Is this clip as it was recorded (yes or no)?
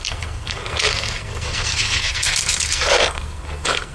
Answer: no